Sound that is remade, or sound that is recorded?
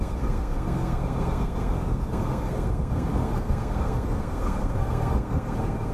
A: remade